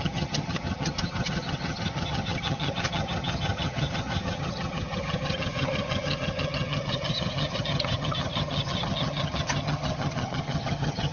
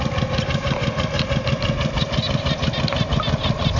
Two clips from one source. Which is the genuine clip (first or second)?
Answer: second